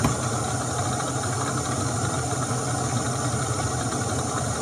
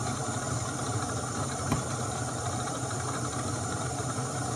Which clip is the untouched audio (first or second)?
first